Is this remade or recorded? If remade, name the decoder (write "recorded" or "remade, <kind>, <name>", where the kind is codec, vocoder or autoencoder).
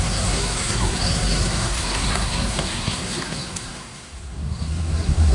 remade, codec, SNAC